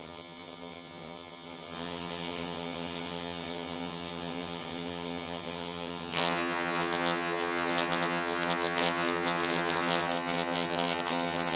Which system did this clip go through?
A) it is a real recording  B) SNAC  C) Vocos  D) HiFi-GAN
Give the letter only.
D